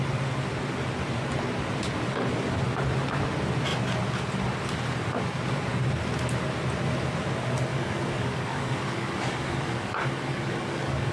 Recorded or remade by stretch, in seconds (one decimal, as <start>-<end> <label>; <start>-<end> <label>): 0.0-7.7 recorded; 7.7-11.1 remade